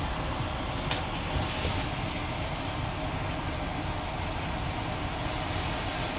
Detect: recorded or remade recorded